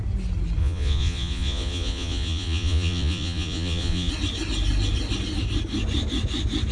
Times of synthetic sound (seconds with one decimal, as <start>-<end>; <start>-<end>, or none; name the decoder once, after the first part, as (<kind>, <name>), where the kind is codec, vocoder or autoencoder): 0.6-4.1 (vocoder, Vocos)